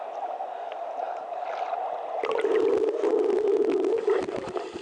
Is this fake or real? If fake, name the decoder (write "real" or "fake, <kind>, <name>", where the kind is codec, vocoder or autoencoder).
real